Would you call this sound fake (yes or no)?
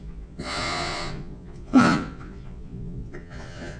yes